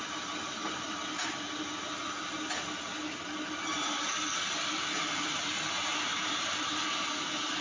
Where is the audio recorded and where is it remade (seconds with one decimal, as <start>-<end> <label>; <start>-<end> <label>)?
0.0-7.6 recorded